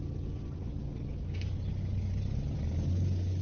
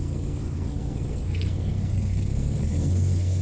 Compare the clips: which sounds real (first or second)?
first